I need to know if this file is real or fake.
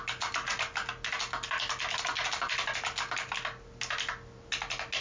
real